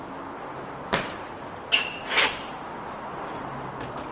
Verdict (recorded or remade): recorded